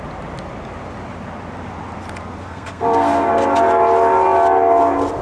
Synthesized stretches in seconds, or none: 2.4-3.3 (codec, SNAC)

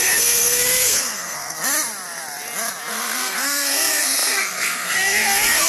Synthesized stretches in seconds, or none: 0.0-1.6 (codec, SNAC); 2.9-5.7

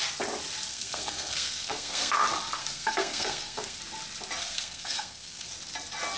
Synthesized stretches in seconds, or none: 0.7-2.1 (codec, SNAC); 2.6-3.8; 4.4-5.5

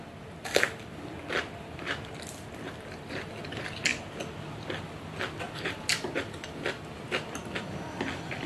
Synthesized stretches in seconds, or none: none